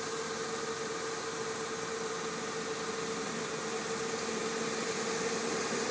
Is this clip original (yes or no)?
yes